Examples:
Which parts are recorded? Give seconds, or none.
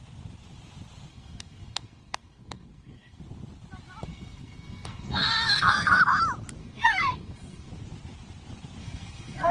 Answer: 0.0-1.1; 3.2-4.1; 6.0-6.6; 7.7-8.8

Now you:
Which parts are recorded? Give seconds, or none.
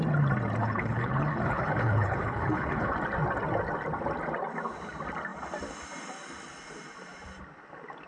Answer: 0.0-0.6; 2.9-8.1